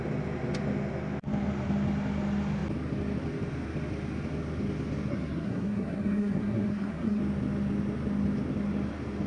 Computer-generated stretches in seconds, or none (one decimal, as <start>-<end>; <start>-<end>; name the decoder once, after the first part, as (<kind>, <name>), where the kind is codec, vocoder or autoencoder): 5.1-7.2 (codec, SNAC)